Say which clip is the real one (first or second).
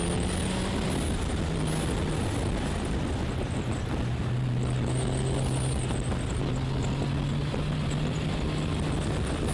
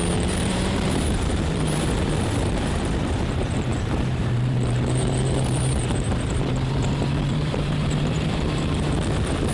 first